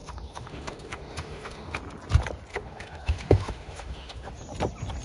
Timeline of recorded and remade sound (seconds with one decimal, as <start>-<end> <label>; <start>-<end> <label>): 0.0-1.8 remade; 1.8-2.5 recorded; 2.5-4.3 remade; 4.3-5.0 recorded

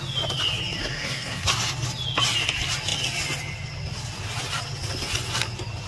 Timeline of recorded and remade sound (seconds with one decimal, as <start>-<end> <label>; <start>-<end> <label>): 0.0-0.8 recorded; 0.8-1.5 remade; 1.5-5.9 recorded

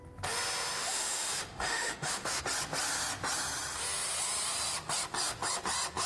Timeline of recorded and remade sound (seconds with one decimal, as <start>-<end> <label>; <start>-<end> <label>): 0.0-0.8 recorded; 0.8-2.4 remade; 2.4-6.1 recorded

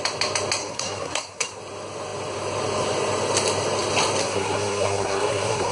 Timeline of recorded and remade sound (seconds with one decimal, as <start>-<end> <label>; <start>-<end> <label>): 0.0-0.6 recorded; 0.6-1.6 remade; 1.6-4.2 recorded; 4.2-5.7 remade

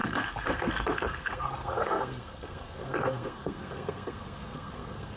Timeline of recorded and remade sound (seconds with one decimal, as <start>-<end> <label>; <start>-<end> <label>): 0.0-5.2 remade

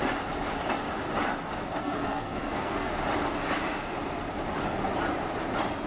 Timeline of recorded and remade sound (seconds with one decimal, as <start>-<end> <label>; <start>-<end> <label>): 0.0-1.8 recorded; 1.8-2.9 remade; 2.9-5.9 recorded

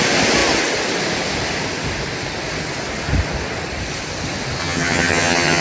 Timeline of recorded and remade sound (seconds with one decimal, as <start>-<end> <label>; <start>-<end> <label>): 0.0-4.6 recorded; 4.6-5.6 remade